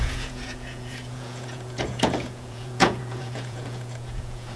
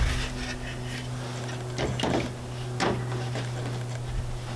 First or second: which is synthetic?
first